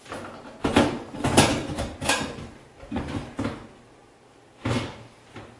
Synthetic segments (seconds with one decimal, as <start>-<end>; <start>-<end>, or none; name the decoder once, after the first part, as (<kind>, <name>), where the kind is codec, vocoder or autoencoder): none